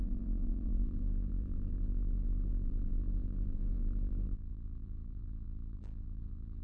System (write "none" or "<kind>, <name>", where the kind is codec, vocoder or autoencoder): vocoder, BigVGAN v2